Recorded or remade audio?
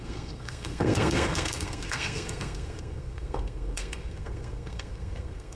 remade